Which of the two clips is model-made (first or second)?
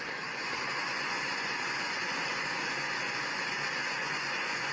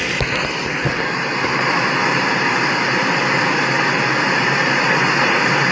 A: first